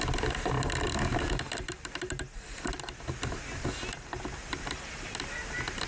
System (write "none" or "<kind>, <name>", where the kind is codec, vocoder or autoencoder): none